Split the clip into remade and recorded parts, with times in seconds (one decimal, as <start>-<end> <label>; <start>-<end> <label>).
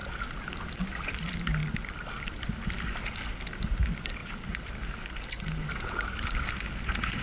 0.0-7.2 recorded